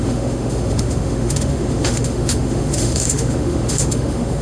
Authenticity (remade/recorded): remade